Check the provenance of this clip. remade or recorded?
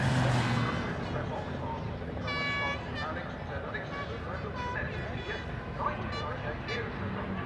recorded